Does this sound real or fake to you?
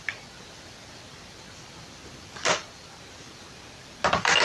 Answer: real